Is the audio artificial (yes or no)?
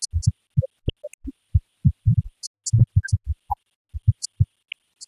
no